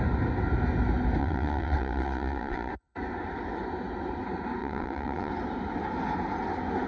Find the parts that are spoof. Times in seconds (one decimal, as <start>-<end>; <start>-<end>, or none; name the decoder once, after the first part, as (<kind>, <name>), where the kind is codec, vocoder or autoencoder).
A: 1.2-2.7 (vocoder, WaveNeXt); 4.6-5.3